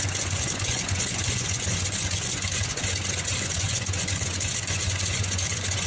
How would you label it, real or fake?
fake